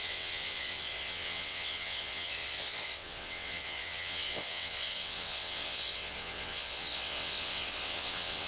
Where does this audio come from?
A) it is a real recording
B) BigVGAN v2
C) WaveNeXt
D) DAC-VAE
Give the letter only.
C